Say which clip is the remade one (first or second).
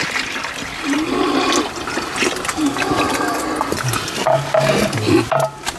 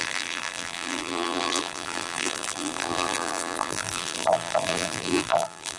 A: second